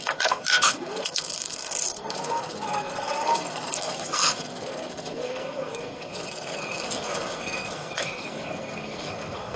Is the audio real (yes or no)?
no